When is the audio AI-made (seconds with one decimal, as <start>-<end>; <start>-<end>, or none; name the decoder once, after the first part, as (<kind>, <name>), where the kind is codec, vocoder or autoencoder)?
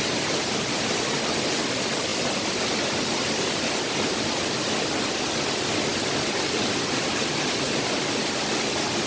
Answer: none